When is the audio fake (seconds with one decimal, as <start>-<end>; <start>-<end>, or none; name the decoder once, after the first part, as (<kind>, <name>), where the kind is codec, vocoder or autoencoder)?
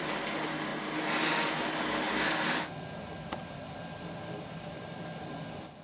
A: none